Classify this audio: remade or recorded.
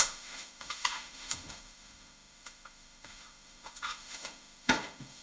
remade